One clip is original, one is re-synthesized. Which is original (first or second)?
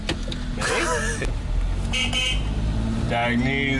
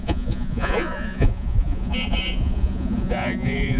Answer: first